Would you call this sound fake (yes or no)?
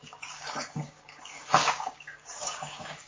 yes